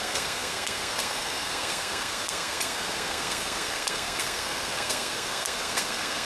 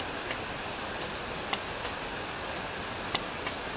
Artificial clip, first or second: first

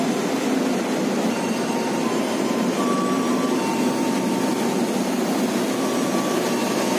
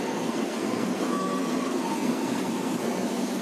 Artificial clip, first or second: second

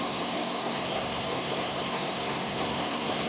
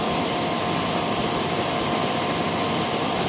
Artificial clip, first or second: first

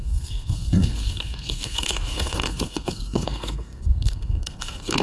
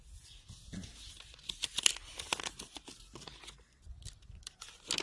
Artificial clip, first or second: first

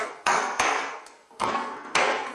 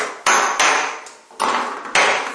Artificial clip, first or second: first